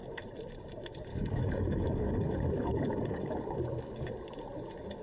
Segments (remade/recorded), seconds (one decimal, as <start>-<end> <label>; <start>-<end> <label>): 0.0-1.1 recorded; 1.1-4.1 remade; 4.1-5.0 recorded